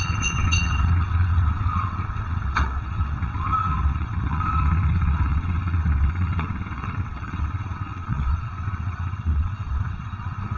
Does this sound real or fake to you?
fake